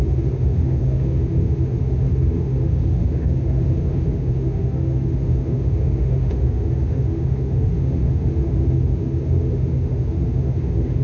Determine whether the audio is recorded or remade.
remade